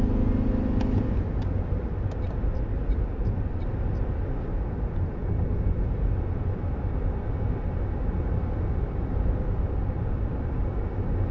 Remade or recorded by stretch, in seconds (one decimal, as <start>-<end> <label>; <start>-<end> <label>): 0.0-11.3 recorded